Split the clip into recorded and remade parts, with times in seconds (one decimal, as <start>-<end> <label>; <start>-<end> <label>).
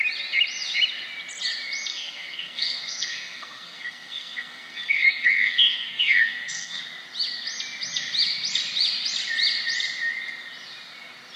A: 0.0-1.9 recorded; 1.9-6.8 remade; 6.8-11.4 recorded